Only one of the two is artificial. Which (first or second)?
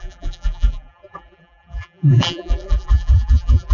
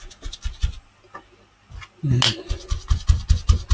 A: first